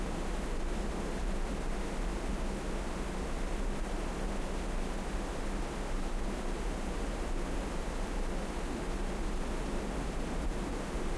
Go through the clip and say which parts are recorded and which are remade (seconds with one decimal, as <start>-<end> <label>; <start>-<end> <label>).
0.0-11.2 recorded